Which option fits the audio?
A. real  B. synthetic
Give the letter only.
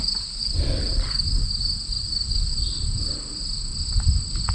A